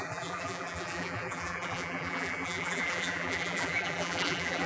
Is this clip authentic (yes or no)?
no